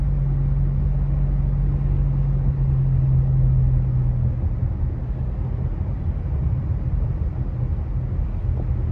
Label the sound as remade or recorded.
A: recorded